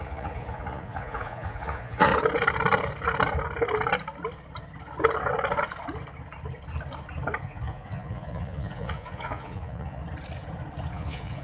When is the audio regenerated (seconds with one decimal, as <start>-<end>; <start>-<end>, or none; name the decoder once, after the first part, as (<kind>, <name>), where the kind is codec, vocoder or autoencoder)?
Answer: 0.0-2.1 (vocoder, Vocos); 7.4-10.0; 10.9-11.4